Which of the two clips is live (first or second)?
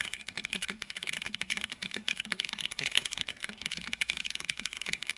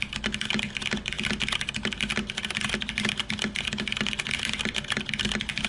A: second